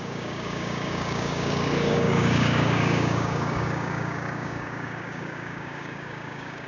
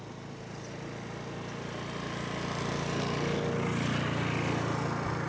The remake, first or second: first